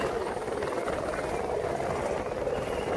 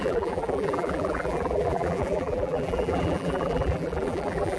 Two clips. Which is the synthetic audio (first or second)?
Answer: second